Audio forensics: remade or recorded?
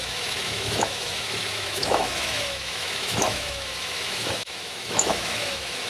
remade